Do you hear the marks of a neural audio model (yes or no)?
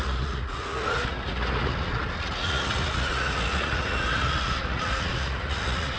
yes